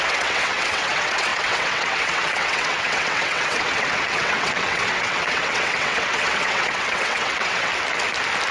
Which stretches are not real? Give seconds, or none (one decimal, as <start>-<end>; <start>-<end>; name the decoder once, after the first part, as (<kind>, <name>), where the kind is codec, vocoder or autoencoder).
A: 0.0-7.7 (vocoder, WaveNeXt)